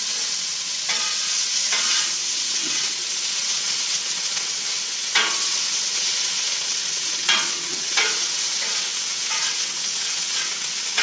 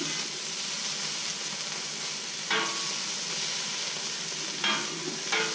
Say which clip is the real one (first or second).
second